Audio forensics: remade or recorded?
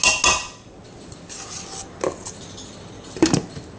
recorded